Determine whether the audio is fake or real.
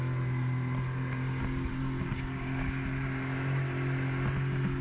real